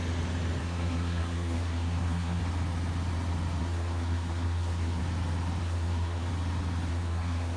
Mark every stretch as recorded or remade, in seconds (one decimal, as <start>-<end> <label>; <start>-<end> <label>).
0.0-0.6 recorded; 0.6-2.4 remade; 2.4-3.6 recorded; 3.6-5.0 remade; 5.0-5.6 recorded; 5.6-6.3 remade; 6.3-6.9 recorded; 6.9-7.6 remade